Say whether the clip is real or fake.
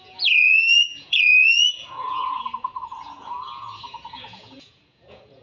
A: fake